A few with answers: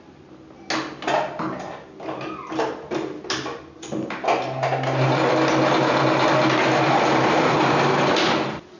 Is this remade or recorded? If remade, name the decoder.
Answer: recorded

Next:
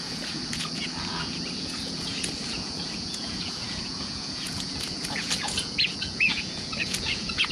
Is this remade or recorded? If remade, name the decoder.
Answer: remade, vocoder, Vocos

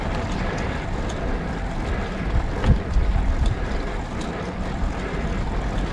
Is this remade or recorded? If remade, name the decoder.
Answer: recorded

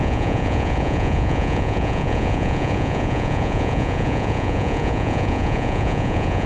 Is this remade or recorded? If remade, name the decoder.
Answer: remade, vocoder, Vocos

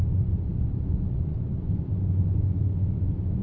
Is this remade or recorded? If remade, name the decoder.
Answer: remade, vocoder, Vocos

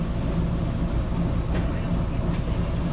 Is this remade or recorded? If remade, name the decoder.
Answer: recorded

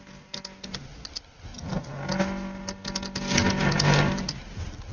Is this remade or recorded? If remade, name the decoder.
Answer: recorded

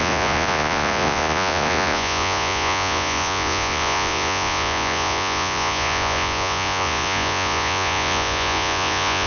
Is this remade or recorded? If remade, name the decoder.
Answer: remade, vocoder, Vocos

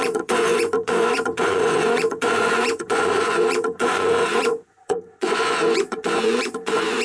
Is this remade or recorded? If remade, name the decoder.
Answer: remade, vocoder, Vocos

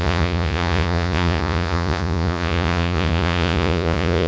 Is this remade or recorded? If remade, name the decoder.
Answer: remade, vocoder, Vocos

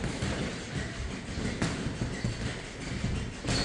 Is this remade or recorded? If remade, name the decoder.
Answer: recorded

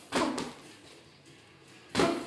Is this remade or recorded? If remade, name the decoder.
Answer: recorded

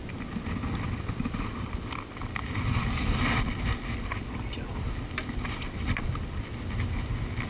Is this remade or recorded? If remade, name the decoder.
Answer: recorded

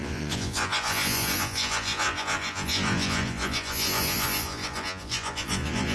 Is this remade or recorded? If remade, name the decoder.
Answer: remade, vocoder, Vocos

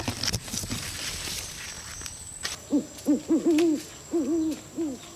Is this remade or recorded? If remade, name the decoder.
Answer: recorded